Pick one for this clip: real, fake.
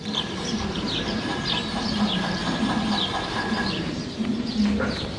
fake